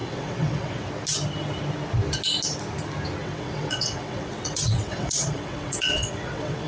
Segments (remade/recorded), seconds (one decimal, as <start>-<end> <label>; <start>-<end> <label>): 0.0-0.9 remade; 0.9-3.2 recorded; 3.2-6.7 remade